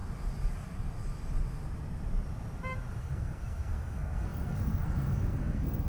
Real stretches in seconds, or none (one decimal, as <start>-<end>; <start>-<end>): 0.0-3.0